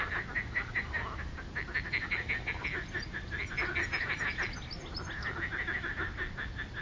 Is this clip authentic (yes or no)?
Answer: yes